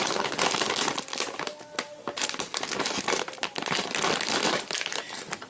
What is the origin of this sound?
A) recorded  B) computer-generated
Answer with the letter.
A